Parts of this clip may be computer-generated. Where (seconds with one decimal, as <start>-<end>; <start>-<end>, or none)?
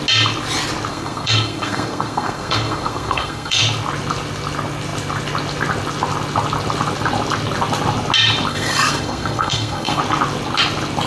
0.9-3.6; 8.5-10.0